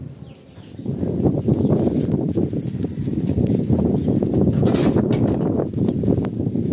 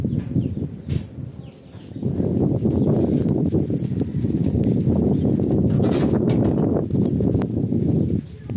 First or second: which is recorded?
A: second